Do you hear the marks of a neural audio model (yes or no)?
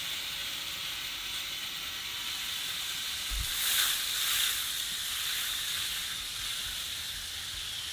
no